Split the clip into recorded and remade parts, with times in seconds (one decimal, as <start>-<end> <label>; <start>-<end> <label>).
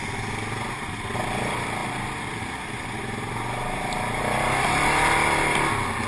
0.0-1.8 recorded; 1.8-4.7 remade; 4.7-6.1 recorded